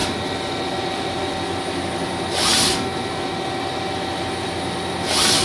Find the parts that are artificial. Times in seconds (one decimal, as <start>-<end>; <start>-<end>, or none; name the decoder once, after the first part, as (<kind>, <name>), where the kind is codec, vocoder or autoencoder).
none